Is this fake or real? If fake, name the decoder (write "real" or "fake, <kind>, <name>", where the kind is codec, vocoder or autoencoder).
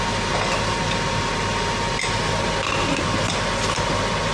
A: real